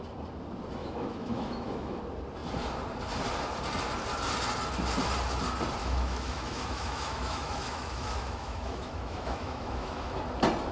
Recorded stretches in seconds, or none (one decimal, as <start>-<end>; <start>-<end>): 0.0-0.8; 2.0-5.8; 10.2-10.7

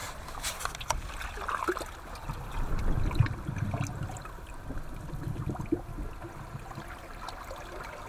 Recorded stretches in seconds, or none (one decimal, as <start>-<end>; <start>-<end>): 0.0-8.1

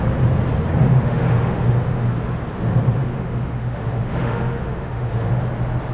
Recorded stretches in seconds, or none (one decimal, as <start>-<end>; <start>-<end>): 0.0-0.8; 2.1-3.0; 5.3-5.9

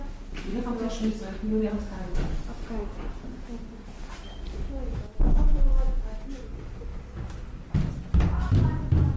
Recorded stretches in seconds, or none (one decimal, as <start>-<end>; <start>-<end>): 0.0-9.2

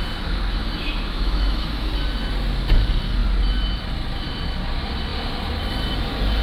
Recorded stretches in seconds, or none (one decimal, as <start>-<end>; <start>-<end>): 0.0-0.6; 1.9-6.4